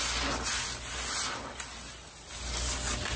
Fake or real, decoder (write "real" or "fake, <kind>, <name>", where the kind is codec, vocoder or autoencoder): real